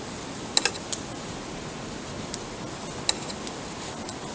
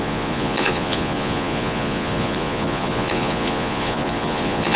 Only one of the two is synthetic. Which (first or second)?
second